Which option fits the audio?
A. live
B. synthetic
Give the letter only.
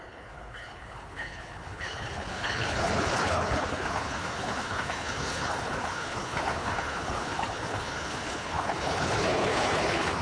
B